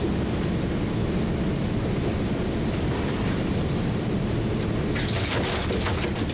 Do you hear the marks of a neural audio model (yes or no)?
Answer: no